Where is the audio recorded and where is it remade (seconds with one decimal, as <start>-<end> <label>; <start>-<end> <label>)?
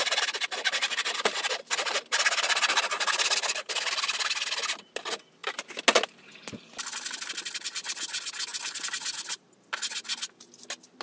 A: 0.0-11.0 recorded